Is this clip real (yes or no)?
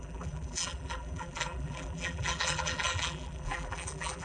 no